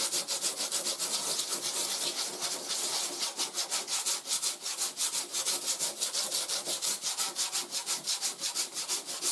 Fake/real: real